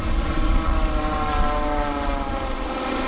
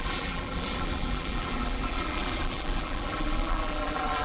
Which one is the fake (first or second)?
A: second